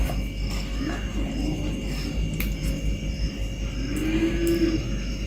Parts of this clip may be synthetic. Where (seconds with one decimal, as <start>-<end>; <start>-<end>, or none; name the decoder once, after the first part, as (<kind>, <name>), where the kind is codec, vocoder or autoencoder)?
none